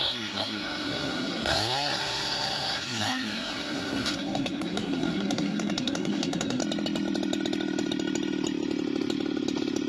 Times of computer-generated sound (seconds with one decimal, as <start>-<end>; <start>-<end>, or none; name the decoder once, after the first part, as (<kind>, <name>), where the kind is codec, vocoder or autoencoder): 0.0-6.6 (codec, SNAC)